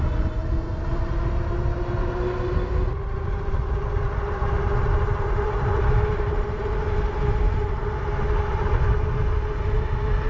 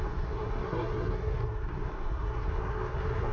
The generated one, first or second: second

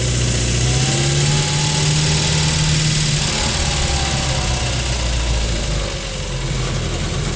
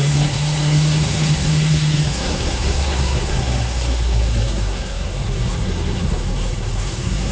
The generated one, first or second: second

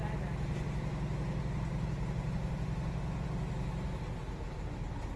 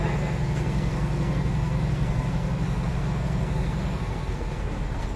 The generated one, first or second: second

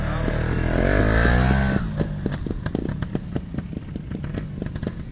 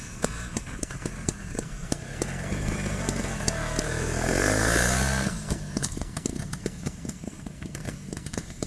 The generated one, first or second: second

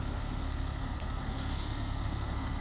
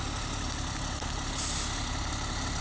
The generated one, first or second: first